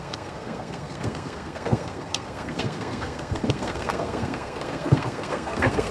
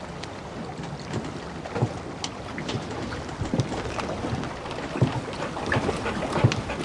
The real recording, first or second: second